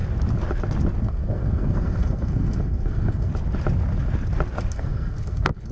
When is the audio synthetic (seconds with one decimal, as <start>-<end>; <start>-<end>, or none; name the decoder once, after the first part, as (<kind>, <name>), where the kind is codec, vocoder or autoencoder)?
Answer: 1.0-3.3 (codec, SNAC); 4.7-5.7